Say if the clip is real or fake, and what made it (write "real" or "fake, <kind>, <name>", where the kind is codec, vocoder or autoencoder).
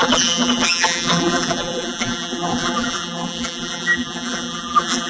fake, vocoder, BigVGAN v2